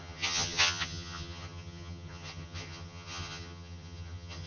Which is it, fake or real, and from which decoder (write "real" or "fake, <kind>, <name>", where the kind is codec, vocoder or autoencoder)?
fake, vocoder, HiFi-GAN